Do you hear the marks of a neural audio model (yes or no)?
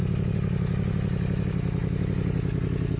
no